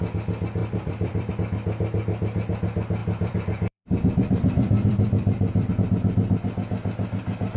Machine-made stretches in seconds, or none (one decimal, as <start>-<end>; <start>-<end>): 0.6-1.3; 3.0-5.7